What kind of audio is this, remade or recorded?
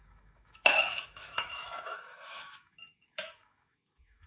remade